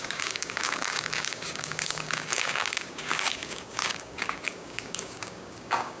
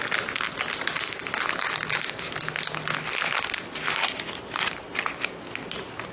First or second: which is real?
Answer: second